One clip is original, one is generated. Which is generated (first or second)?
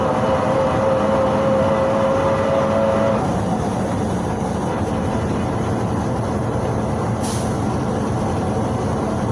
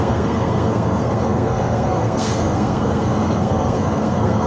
second